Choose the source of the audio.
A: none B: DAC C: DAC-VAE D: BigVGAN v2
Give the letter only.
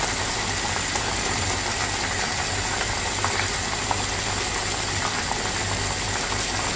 A